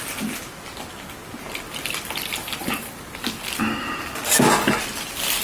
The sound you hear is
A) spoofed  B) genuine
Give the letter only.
B